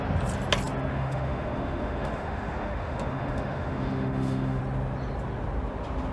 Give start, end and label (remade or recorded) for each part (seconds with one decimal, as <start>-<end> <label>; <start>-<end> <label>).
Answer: 0.0-0.9 recorded; 0.9-4.6 remade; 4.6-6.1 recorded